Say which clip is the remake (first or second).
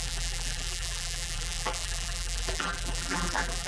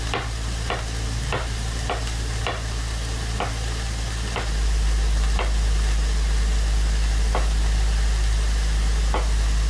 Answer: first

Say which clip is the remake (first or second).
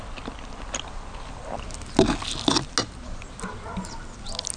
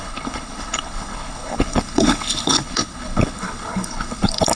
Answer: second